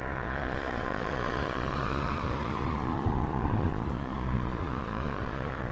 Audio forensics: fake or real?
fake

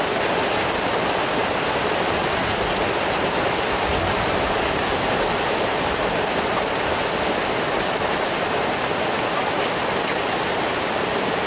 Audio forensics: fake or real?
real